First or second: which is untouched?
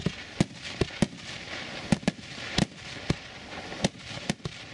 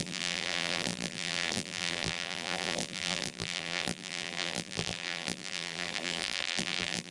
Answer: first